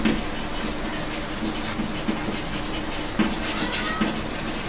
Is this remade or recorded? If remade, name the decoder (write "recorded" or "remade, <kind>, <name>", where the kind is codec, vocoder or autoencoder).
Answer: recorded